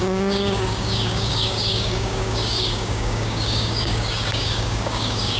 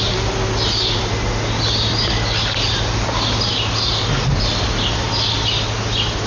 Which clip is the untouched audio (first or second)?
second